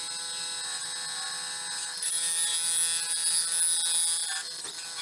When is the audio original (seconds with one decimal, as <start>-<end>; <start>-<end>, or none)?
0.0-5.0